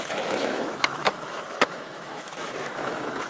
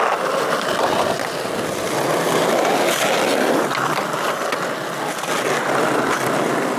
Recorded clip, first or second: second